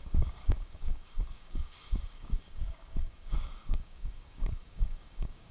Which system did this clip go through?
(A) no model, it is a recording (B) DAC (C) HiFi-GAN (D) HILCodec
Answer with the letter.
B